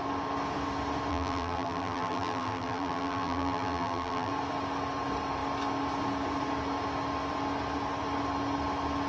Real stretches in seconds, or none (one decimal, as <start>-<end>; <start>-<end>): 0.0-1.1; 4.3-9.1